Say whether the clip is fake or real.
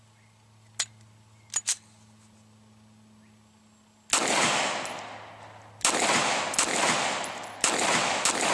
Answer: real